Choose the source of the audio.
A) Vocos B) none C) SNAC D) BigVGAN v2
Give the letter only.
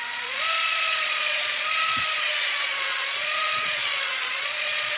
A